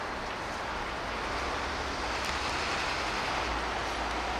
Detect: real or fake real